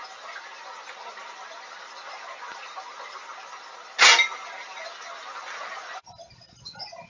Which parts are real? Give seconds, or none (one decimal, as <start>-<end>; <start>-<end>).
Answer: 0.0-7.1